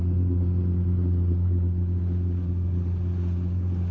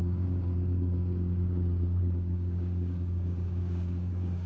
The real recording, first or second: first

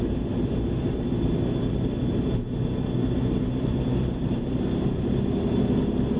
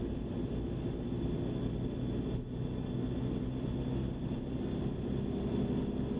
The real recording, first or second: second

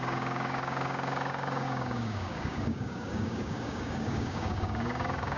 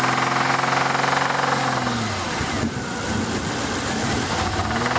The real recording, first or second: second